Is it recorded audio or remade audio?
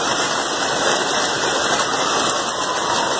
recorded